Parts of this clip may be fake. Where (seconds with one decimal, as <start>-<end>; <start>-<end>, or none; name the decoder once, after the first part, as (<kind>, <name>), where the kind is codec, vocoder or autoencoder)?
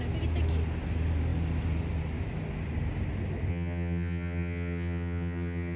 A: 3.5-5.8 (vocoder, HiFi-GAN)